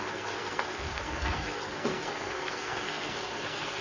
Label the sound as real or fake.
fake